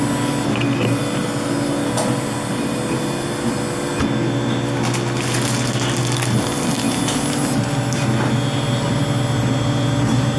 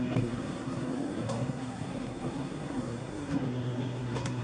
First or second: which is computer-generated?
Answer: second